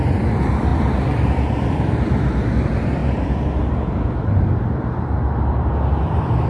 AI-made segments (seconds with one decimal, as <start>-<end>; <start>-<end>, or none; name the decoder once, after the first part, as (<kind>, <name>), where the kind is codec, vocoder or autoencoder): 0.0-3.0 (vocoder, BigVGAN v2); 6.1-6.5